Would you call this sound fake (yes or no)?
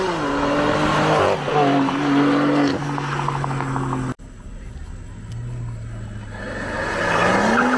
no